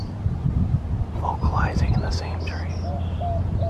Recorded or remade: recorded